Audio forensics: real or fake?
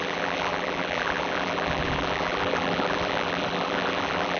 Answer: fake